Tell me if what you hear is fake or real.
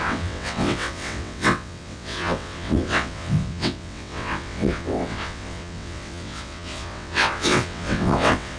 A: fake